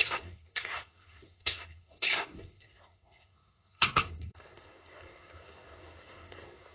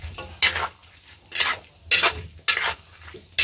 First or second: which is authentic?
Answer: second